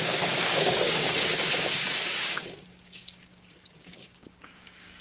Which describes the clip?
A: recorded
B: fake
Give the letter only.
B